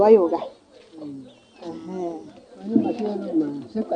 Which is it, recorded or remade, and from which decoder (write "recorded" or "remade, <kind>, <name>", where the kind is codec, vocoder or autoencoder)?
recorded